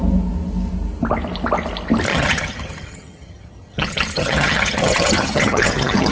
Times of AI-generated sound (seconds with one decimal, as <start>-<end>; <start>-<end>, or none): 2.1-6.1